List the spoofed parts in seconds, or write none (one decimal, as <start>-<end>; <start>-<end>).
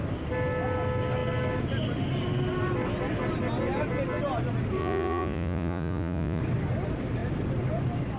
4.8-6.4